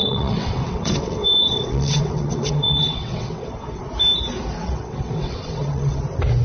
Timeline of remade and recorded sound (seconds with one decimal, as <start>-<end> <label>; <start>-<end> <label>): 0.0-3.8 remade; 3.8-4.6 recorded; 4.6-6.0 remade; 6.0-6.4 recorded